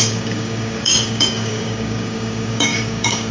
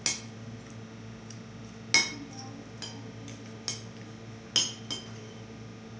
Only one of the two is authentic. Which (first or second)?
second